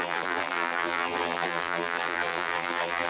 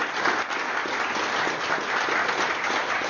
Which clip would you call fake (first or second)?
first